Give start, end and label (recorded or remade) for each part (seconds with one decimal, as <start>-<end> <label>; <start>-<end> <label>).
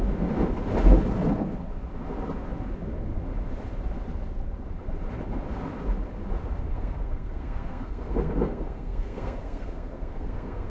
0.0-6.7 recorded; 6.7-10.7 remade